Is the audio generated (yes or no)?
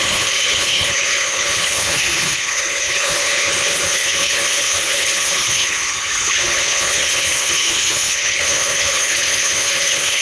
yes